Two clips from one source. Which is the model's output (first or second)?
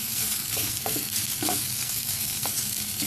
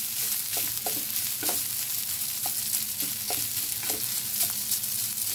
first